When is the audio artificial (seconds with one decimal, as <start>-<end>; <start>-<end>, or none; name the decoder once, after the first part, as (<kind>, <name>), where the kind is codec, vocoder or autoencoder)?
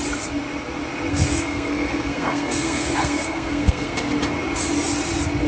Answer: 1.1-4.0 (codec, SNAC)